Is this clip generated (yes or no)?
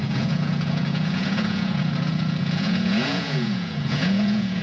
yes